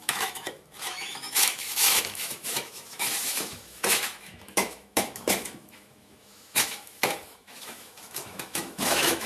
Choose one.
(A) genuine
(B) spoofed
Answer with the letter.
B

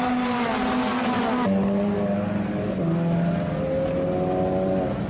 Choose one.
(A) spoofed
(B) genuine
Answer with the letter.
B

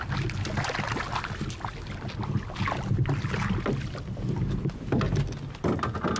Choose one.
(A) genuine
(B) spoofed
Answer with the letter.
A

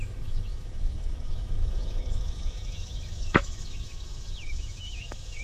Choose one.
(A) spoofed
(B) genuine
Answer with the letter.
A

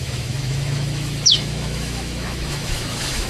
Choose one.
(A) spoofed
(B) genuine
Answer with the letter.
A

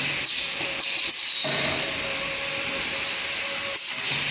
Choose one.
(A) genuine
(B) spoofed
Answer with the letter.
A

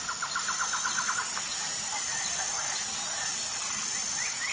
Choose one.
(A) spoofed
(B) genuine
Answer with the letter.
B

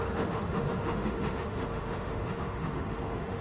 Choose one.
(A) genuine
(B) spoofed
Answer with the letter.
B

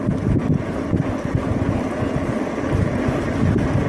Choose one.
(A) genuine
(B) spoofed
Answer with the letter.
A